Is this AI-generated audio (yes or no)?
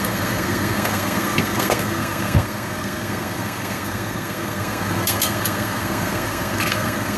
yes